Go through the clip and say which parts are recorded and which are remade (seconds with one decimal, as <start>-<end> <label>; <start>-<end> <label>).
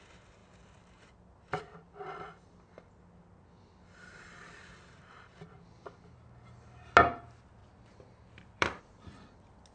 0.0-7.6 recorded; 7.6-8.8 remade; 8.8-9.7 recorded